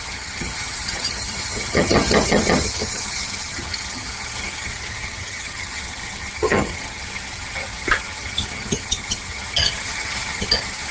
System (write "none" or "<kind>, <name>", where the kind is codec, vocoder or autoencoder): vocoder, HiFi-GAN